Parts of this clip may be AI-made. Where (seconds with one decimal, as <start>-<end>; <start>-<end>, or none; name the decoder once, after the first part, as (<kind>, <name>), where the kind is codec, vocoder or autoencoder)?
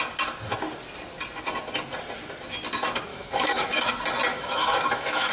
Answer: 3.1-3.9 (autoencoder, DAC-VAE); 4.3-5.3